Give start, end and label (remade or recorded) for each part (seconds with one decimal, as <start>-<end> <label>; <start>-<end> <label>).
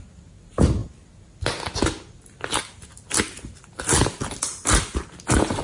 0.0-5.6 recorded